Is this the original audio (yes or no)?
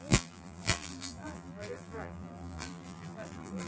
no